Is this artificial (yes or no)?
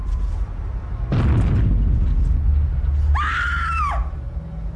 no